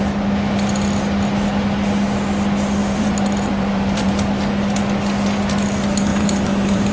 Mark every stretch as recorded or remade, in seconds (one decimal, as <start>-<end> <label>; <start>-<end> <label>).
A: 0.0-2.8 recorded; 2.8-4.4 remade; 4.4-6.1 recorded; 6.1-6.9 remade